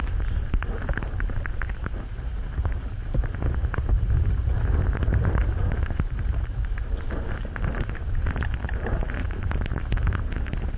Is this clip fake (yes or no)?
yes